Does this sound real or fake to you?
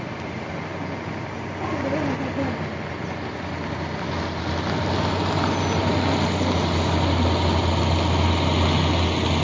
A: real